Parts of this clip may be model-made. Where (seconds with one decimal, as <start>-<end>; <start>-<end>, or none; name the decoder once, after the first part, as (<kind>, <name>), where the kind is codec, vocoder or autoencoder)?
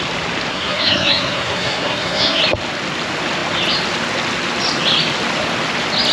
0.5-2.4 (codec, SNAC)